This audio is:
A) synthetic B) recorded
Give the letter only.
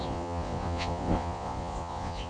A